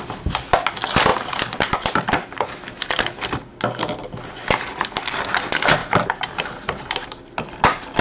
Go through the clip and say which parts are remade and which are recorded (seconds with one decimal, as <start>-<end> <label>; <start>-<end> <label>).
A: 0.0-1.1 recorded; 1.1-2.9 remade; 2.9-5.8 recorded; 5.8-7.2 remade; 7.2-8.0 recorded